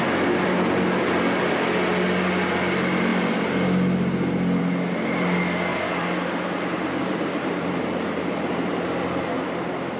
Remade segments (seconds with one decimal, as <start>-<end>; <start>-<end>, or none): 5.7-8.8